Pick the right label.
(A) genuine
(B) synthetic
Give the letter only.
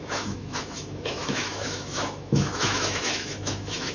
B